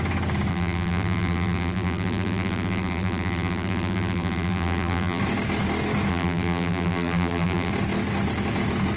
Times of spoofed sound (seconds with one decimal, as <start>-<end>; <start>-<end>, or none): 0.5-5.2; 6.1-7.7